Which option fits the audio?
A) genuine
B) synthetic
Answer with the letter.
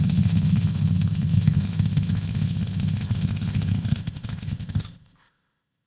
B